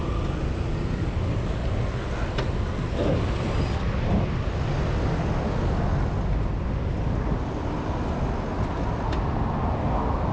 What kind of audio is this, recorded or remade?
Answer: recorded